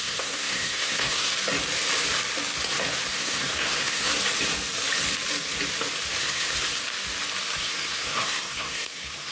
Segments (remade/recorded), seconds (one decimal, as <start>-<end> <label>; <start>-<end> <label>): 0.0-1.3 remade; 1.3-3.1 recorded; 3.1-4.1 remade; 4.1-6.2 recorded; 6.2-6.8 remade; 6.8-7.6 recorded; 7.6-9.3 remade